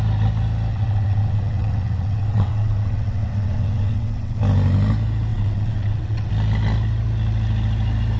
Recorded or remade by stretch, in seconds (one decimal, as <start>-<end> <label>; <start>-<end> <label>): 0.0-0.7 recorded; 0.7-4.4 remade; 4.4-5.3 recorded; 5.3-6.3 remade; 6.3-8.2 recorded